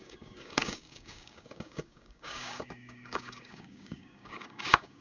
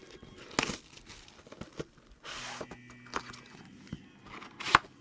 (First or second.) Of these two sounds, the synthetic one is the first